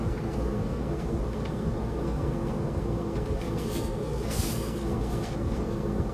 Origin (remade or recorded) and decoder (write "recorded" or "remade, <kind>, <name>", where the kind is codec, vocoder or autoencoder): remade, codec, SNAC